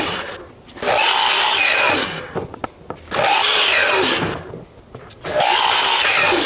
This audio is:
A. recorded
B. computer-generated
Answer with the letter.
A